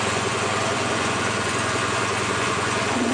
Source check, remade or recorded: remade